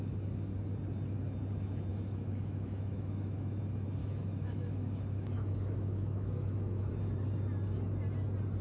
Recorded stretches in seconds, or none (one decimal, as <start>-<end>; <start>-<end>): 0.0-1.9; 3.6-4.0; 6.9-8.6